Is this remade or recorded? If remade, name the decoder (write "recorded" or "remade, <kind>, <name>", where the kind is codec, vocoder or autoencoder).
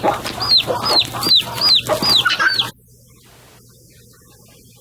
recorded